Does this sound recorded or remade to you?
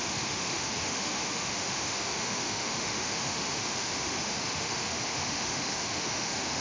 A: remade